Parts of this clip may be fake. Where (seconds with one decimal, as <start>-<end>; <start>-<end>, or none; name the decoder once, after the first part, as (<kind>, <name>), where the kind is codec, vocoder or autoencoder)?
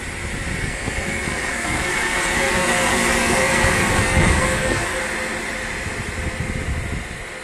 0.6-5.0 (codec, SNAC)